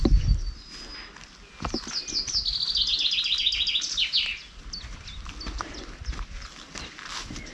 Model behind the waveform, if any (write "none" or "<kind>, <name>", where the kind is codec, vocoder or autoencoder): none